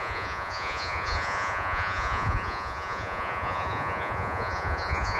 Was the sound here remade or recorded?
remade